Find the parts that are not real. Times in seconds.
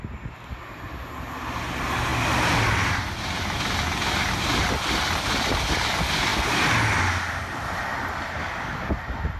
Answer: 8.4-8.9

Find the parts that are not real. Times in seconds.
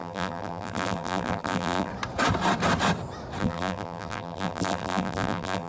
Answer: 0.0-1.9; 3.4-5.7